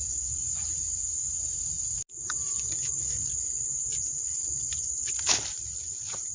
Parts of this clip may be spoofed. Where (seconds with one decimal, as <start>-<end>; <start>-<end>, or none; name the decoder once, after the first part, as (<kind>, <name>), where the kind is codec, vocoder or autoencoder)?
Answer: none